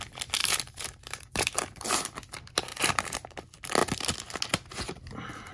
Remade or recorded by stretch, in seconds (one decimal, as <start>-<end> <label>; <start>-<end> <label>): 0.0-0.4 recorded; 0.4-1.9 remade; 1.9-2.7 recorded; 2.7-3.4 remade; 3.4-5.5 recorded